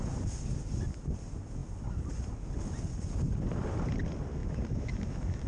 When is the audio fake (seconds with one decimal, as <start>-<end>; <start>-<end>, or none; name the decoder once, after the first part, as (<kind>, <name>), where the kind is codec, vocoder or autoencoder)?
4.4-5.5 (autoencoder, DAC-VAE)